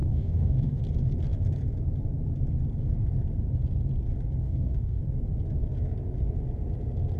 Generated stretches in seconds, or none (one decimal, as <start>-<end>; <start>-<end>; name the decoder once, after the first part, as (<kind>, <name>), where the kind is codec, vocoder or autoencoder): 0.0-0.8 (codec, DAC); 4.4-5.0